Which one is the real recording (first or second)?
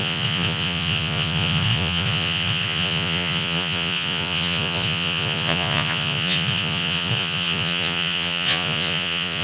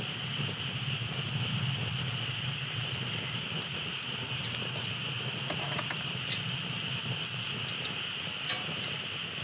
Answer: second